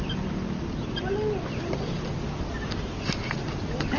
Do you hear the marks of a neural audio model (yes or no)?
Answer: no